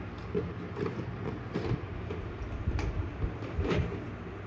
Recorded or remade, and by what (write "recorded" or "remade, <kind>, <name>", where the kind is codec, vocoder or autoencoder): recorded